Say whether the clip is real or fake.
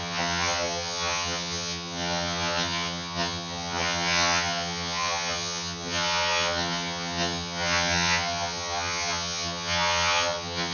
fake